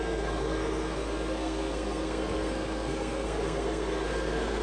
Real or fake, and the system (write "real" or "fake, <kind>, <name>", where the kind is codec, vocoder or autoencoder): fake, codec, SNAC